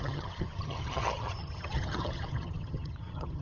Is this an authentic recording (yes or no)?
no